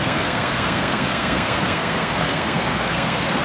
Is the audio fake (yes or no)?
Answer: yes